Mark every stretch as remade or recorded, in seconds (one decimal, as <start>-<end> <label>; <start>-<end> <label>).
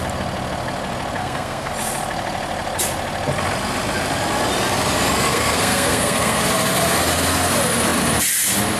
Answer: 0.0-1.2 recorded; 1.2-1.7 remade; 1.7-5.3 recorded; 5.3-6.4 remade; 6.4-8.8 recorded